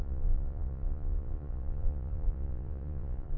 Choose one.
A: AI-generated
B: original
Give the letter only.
A